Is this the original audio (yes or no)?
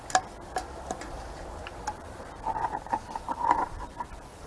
no